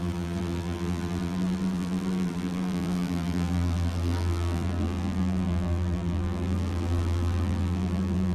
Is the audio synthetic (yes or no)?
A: yes